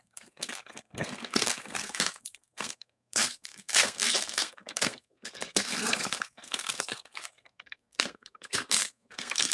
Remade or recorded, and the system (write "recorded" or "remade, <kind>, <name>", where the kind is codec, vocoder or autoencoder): remade, codec, SNAC